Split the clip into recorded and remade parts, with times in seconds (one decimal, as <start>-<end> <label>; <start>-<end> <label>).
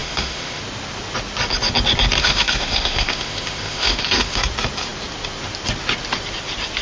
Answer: 0.0-0.6 remade; 0.6-2.2 recorded; 2.2-4.4 remade; 4.4-6.8 recorded